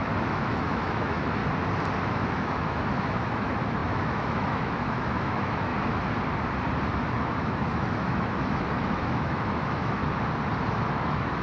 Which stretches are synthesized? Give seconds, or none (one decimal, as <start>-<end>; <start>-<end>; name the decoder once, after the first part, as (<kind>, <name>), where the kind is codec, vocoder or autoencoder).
0.0-1.4 (autoencoder, DAC-VAE); 2.0-5.7; 7.0-10.0; 10.9-11.4